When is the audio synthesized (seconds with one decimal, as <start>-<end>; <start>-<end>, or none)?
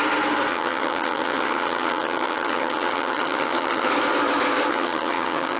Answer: 0.5-3.9; 4.7-5.6